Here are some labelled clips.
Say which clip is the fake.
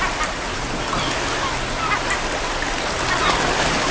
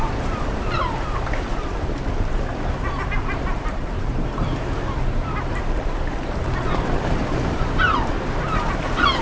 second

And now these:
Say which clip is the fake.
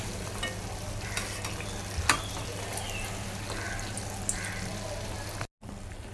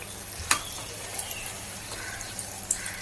second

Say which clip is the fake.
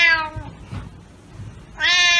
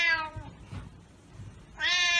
second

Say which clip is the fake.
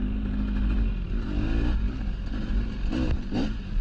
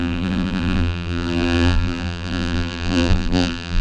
second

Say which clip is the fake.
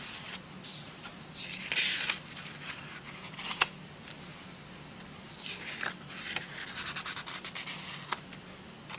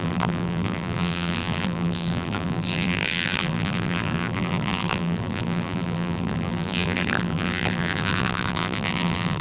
second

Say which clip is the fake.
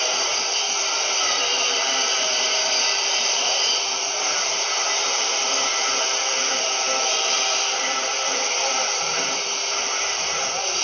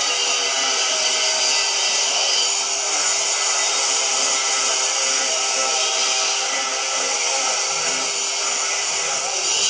first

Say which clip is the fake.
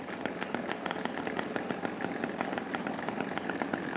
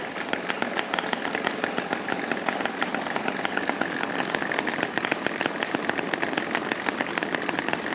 second